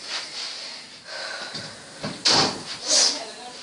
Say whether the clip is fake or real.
real